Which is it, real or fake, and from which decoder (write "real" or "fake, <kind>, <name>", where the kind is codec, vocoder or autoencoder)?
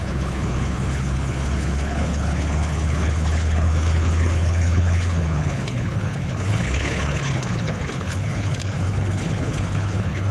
fake, codec, HILCodec